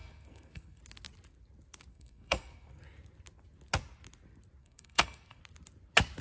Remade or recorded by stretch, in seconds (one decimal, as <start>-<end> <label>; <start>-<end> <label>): 0.0-0.8 remade; 0.8-1.9 recorded; 1.9-2.7 remade; 2.7-4.6 recorded; 4.6-5.4 remade; 5.4-6.2 recorded